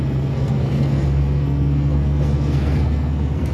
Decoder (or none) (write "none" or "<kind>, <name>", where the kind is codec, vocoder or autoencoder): codec, SNAC